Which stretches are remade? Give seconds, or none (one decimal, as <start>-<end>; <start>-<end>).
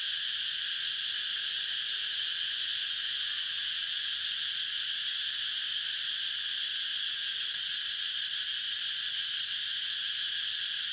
2.2-4.5